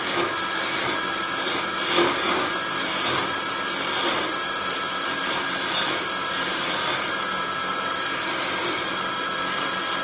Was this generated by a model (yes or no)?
no